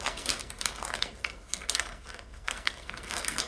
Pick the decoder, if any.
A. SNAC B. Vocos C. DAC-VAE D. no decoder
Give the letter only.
A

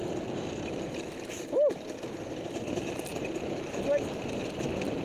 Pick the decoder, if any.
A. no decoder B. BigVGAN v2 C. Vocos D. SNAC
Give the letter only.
A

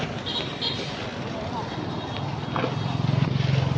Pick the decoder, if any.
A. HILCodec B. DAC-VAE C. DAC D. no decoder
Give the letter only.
D